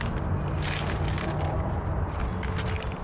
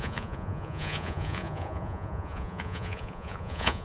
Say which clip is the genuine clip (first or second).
first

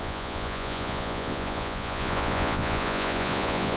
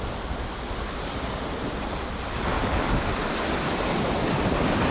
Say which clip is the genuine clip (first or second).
second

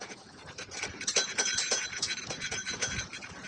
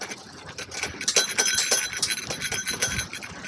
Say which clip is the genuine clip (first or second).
second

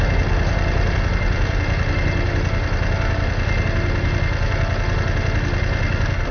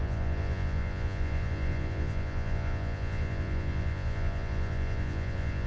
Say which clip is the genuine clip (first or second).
first